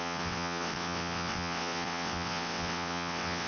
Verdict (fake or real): fake